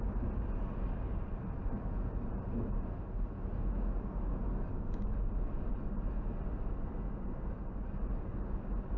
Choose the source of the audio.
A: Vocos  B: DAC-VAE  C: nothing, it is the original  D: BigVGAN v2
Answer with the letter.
C